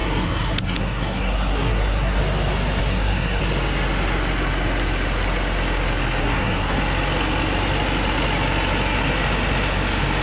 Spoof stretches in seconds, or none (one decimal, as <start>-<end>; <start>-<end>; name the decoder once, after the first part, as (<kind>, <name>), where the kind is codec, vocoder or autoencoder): 0.0-2.2 (codec, SNAC); 2.8-3.4; 6.2-6.8